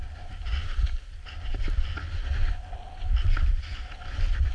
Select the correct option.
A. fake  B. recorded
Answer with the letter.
B